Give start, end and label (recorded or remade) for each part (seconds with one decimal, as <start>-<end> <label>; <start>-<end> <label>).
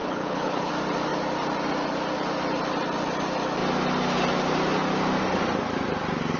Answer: 0.0-0.7 remade; 0.7-6.4 recorded